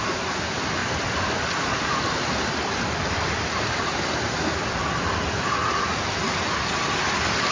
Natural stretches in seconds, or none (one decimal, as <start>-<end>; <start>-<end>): 0.0-0.8; 5.0-7.5